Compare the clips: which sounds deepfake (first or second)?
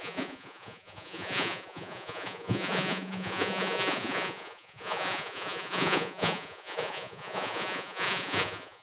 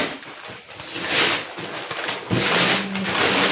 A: first